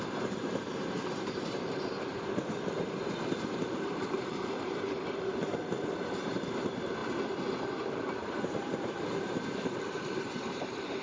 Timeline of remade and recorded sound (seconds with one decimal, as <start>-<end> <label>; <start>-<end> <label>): 0.0-7.0 remade; 7.0-7.6 recorded; 7.6-11.0 remade

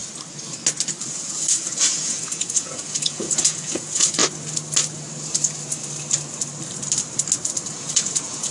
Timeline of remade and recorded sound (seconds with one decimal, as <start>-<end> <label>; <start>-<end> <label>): 0.0-1.1 recorded; 1.1-4.2 remade; 4.2-7.7 recorded; 7.7-8.5 remade

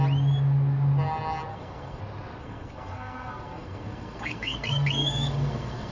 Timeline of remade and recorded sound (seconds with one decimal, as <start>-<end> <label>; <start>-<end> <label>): 0.0-1.5 recorded; 1.5-2.0 remade; 2.0-2.4 recorded; 2.4-5.9 remade

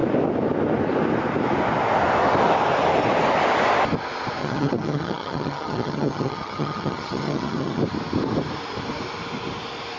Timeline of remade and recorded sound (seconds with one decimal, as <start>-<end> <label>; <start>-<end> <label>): 0.0-4.4 recorded; 4.4-7.8 remade; 7.8-10.0 recorded

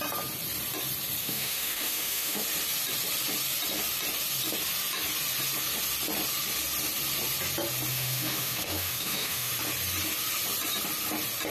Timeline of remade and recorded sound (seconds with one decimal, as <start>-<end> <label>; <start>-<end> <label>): 0.0-1.2 recorded; 1.2-2.4 remade; 2.4-7.9 recorded; 7.9-9.5 remade; 9.5-11.5 recorded